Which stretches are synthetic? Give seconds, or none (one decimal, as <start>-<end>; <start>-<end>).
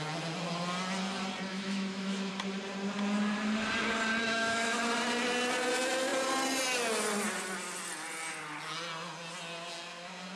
1.5-2.3; 4.2-4.8